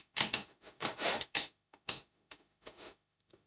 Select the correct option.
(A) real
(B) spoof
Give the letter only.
B